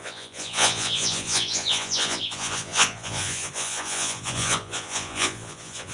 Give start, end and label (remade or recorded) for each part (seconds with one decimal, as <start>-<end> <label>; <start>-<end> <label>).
0.0-5.9 remade